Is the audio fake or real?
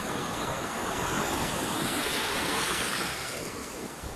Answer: fake